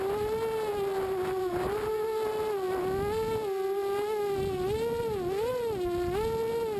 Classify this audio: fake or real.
real